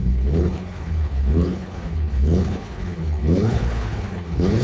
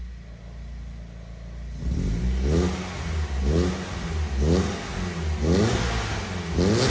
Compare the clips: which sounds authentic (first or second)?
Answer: second